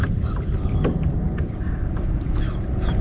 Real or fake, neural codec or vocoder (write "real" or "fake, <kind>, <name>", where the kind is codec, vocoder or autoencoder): real